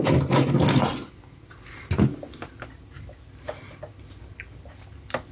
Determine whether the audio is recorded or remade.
recorded